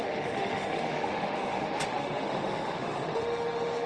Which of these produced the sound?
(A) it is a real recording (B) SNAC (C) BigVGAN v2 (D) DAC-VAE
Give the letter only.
D